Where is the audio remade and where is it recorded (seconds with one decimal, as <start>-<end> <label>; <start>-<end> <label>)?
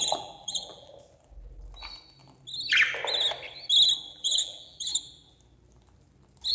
0.0-0.9 remade; 0.9-4.1 recorded; 4.1-4.9 remade; 4.9-6.5 recorded